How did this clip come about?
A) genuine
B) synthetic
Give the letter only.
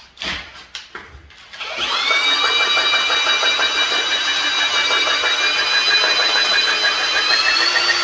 A